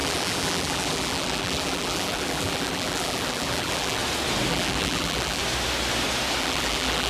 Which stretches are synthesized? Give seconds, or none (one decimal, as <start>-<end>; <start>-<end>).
0.0-4.0; 4.5-5.4; 6.4-7.1